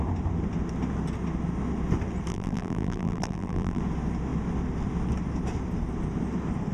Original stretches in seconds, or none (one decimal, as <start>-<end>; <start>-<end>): 0.0-2.3; 3.8-6.7